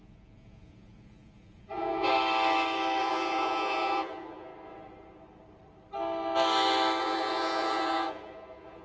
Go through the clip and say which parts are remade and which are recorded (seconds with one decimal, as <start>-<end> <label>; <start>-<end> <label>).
0.0-2.1 remade; 2.1-3.0 recorded; 3.0-4.5 remade; 4.5-7.0 recorded; 7.0-8.8 remade